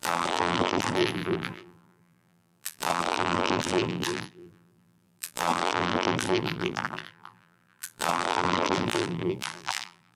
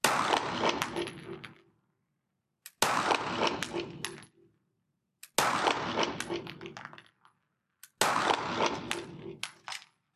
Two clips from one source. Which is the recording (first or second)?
second